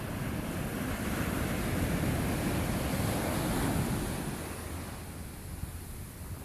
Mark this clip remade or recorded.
recorded